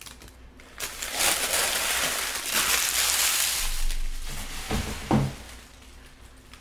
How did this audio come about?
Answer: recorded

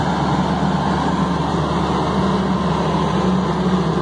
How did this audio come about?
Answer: recorded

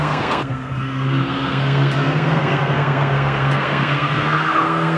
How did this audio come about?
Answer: remade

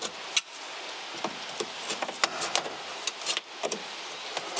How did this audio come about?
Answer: recorded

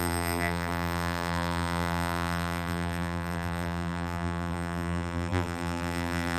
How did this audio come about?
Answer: remade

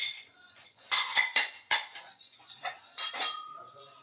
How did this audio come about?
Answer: remade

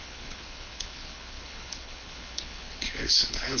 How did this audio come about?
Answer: remade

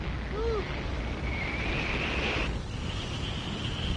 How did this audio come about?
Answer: recorded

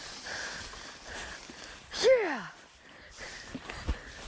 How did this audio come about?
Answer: recorded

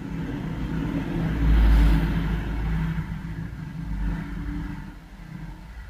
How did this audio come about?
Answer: recorded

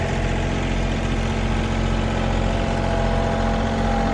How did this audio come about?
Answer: recorded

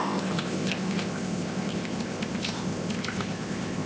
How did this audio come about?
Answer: remade